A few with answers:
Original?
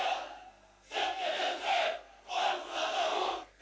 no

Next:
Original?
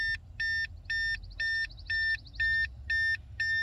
yes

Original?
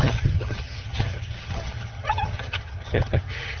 no